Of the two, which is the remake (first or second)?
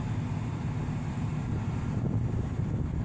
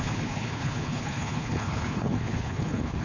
second